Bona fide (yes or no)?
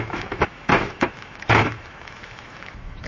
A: no